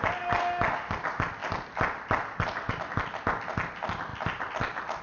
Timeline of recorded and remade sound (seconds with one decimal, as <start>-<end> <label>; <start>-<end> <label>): 0.0-5.0 recorded